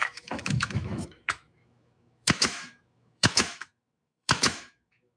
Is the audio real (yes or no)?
no